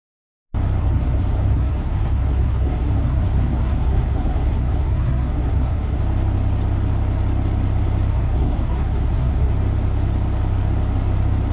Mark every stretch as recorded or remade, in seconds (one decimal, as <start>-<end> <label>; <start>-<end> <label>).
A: 0.0-0.8 recorded; 0.8-6.0 remade; 6.0-8.1 recorded; 8.1-9.5 remade; 9.5-11.5 recorded